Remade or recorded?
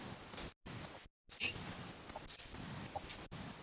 recorded